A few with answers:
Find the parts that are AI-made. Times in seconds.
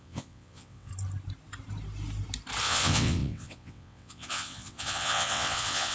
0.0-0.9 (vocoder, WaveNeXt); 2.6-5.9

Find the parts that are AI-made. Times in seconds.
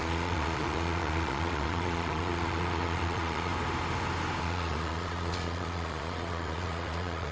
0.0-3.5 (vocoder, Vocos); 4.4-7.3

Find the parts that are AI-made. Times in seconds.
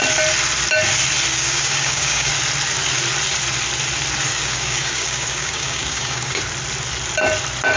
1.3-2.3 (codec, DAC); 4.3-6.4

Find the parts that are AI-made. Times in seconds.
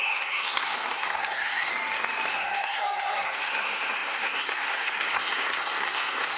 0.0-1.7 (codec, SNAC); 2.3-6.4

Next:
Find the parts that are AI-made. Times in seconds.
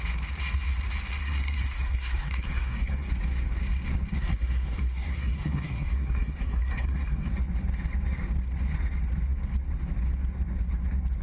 1.2-3.1 (codec, SNAC); 4.1-7.3